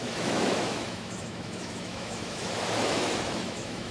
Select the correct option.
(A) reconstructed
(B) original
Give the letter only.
A